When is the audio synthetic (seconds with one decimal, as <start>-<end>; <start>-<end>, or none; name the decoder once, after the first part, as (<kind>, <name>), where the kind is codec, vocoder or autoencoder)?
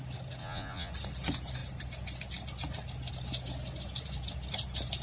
0.4-0.9 (vocoder, Vocos)